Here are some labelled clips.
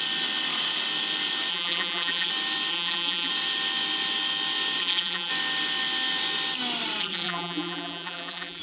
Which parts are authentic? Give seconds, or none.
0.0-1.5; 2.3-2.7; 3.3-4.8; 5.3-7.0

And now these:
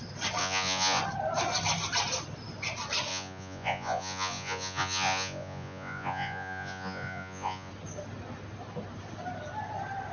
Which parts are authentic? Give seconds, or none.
0.0-0.4; 1.0-3.1; 7.7-10.1

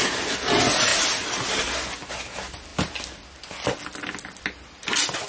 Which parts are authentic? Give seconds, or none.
0.0-5.3

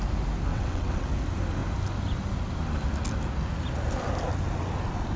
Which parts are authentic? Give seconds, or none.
0.0-0.5; 1.1-5.2

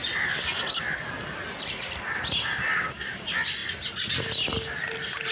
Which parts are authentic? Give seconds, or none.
3.6-4.1